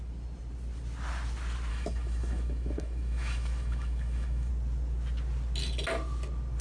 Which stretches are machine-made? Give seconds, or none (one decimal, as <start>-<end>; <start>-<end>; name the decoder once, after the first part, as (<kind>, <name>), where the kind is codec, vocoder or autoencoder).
1.7-4.5 (autoencoder, DAC-VAE)